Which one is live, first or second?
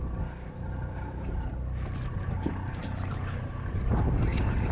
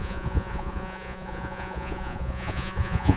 first